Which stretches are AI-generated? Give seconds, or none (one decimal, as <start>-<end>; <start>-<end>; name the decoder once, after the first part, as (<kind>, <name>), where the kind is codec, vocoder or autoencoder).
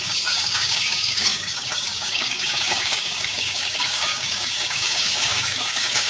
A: 0.0-6.1 (codec, DAC)